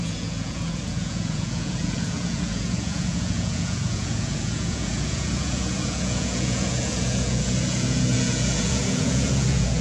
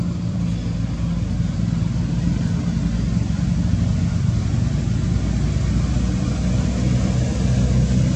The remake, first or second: first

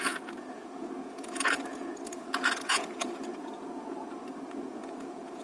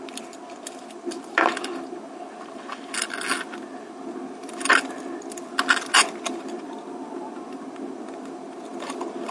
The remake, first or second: first